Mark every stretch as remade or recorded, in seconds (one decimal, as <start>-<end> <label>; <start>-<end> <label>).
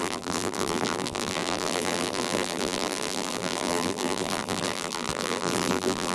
0.0-6.1 remade